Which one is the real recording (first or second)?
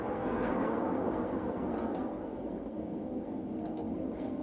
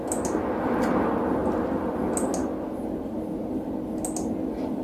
second